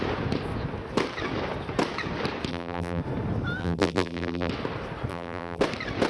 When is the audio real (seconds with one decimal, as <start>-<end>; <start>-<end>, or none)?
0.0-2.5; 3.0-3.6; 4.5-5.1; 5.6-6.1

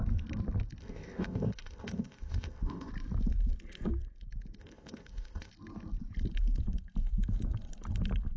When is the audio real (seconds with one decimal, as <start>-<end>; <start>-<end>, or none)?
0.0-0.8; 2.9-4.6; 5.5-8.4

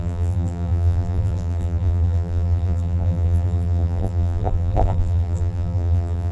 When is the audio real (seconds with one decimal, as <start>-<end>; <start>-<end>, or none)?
none